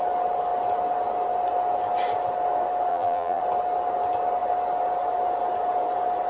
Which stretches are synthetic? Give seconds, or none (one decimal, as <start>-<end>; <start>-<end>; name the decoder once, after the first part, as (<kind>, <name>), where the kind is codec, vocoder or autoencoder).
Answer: 2.9-3.4 (vocoder, BigVGAN v2)